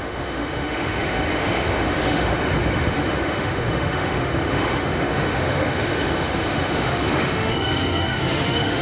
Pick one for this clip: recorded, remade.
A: remade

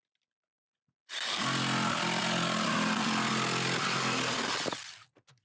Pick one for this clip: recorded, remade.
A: recorded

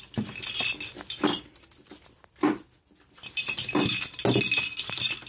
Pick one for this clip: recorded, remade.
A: remade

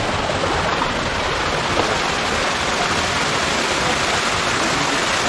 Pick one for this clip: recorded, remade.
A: recorded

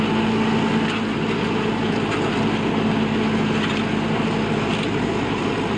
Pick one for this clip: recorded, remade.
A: recorded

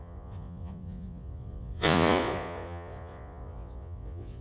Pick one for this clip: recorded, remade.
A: remade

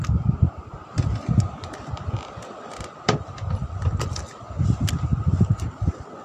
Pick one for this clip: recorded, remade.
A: recorded